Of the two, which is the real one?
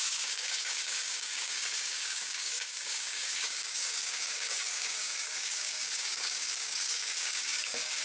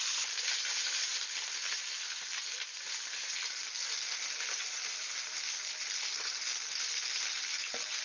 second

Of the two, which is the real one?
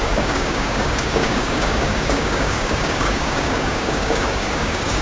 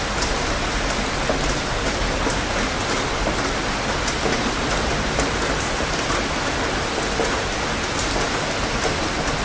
second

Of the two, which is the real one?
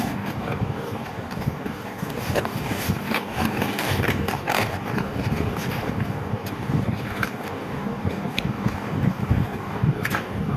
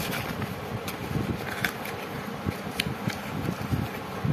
second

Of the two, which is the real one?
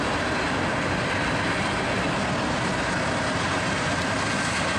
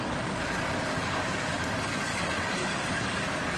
first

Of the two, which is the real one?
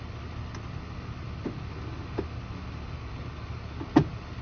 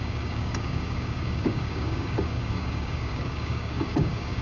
first